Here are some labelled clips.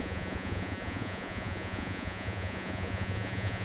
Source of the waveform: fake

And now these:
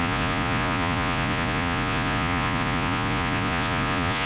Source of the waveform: fake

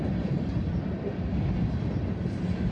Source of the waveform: real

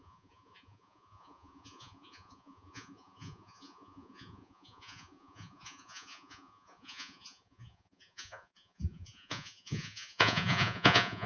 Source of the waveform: fake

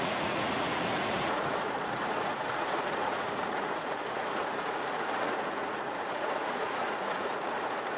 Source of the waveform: fake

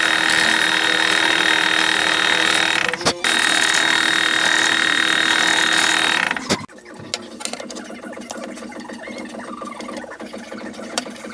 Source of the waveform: real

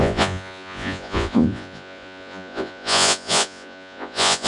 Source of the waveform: fake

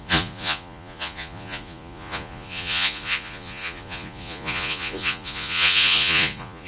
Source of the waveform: fake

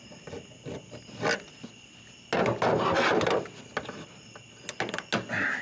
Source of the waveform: real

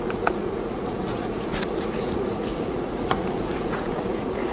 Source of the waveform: fake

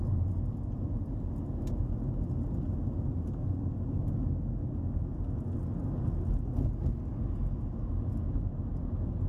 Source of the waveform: real